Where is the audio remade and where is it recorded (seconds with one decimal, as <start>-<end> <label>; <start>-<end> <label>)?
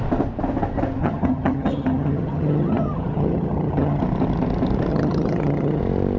0.0-1.0 recorded; 1.0-4.0 remade; 4.0-4.9 recorded; 4.9-5.8 remade; 5.8-6.2 recorded